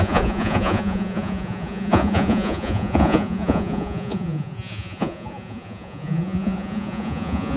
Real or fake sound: fake